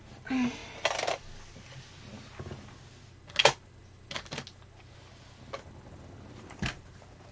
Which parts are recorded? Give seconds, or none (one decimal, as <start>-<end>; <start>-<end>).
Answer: 0.0-7.3